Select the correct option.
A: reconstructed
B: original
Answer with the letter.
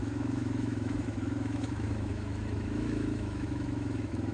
A